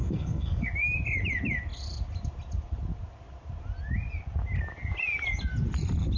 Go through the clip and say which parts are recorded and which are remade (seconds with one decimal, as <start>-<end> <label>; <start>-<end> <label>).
0.0-0.7 remade; 0.7-6.2 recorded